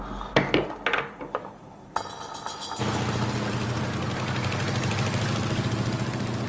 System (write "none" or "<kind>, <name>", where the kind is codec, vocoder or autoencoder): none